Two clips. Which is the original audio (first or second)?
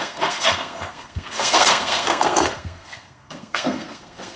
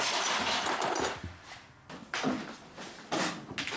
second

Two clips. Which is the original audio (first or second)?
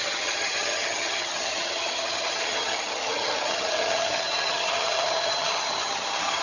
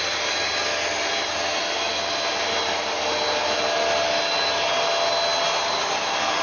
second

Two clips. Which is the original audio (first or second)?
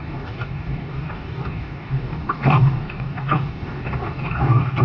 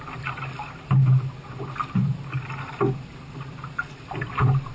second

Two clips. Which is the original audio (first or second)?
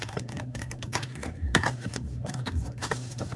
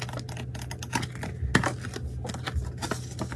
second